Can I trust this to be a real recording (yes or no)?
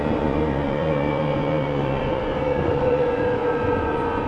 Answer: no